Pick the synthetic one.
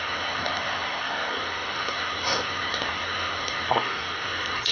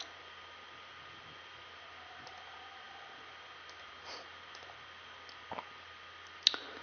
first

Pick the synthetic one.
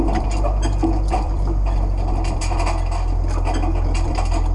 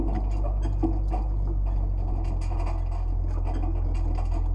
first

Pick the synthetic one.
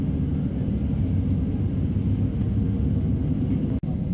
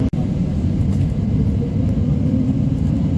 second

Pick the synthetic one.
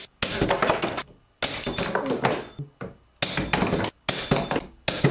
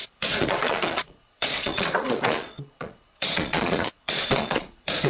second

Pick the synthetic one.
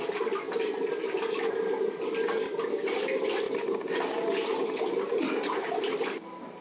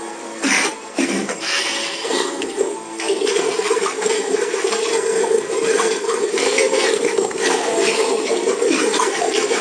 second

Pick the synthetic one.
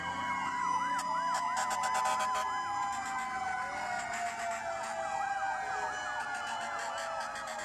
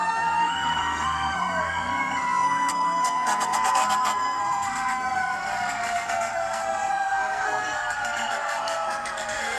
second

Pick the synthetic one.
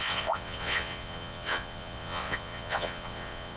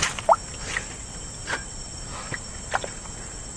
first